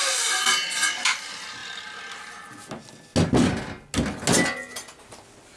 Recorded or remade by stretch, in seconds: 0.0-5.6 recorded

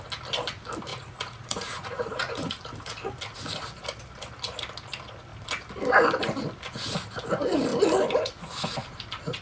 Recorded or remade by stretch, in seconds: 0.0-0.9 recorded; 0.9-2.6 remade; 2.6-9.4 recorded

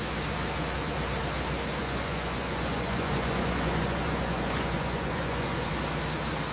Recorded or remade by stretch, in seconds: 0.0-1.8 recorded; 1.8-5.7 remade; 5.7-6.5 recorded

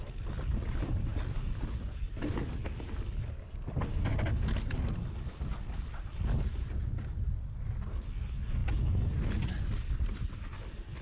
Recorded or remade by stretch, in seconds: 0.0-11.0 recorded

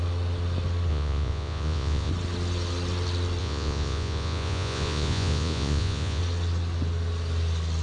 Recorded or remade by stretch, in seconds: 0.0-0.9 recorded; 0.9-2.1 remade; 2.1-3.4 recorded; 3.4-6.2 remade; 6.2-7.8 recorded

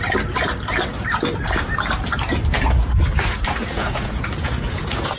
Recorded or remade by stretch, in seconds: 0.0-3.6 recorded; 3.6-5.2 remade